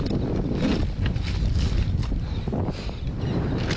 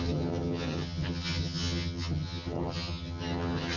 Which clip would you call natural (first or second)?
first